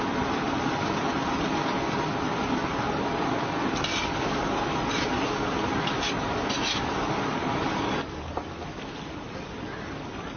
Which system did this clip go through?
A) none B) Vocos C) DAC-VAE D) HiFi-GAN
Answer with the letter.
A